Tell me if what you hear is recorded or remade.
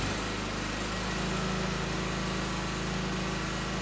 recorded